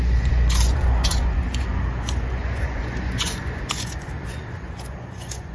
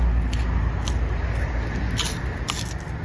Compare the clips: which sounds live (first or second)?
second